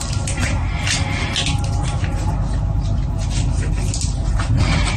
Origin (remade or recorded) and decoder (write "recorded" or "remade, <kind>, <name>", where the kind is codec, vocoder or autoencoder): recorded